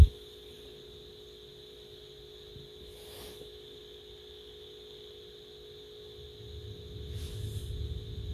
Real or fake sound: real